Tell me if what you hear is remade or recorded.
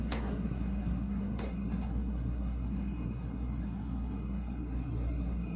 remade